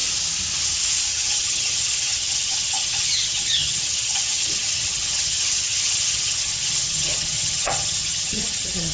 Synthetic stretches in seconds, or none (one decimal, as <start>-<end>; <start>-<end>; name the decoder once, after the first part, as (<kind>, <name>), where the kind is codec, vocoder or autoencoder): 1.1-8.9 (vocoder, HiFi-GAN)